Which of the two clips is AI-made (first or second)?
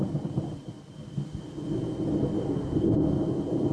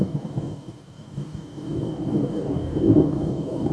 second